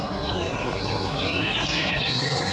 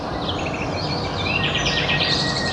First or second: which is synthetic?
first